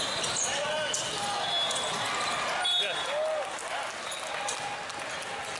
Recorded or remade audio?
recorded